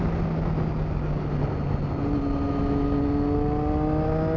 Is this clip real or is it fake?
real